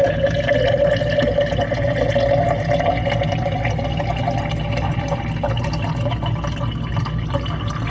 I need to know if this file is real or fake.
real